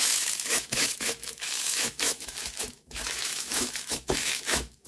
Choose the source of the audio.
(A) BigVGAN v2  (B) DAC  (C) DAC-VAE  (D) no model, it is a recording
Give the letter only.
C